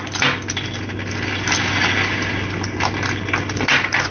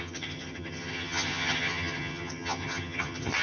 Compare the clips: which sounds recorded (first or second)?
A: first